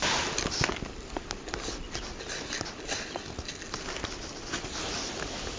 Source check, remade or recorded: recorded